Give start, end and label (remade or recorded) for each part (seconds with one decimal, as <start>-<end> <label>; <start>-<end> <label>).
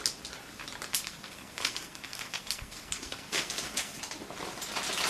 0.0-0.9 recorded; 0.9-4.0 remade; 4.0-5.1 recorded